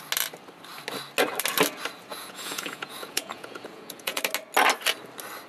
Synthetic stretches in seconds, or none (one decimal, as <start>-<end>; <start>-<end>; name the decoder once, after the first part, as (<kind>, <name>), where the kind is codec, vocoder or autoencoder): 2.1-4.2 (vocoder, Vocos)